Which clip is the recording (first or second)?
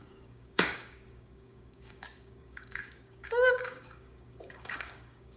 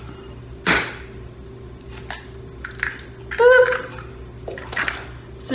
second